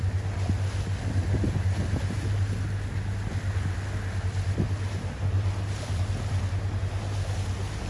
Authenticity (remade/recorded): recorded